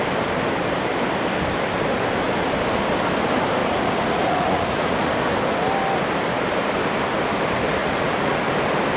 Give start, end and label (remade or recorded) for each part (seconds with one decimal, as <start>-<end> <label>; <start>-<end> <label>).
0.0-3.6 recorded; 3.6-5.1 remade; 5.1-7.8 recorded; 7.8-8.4 remade; 8.4-9.0 recorded